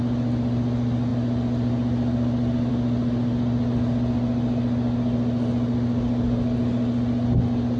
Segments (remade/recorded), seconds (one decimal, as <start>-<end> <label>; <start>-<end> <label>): 0.0-7.8 recorded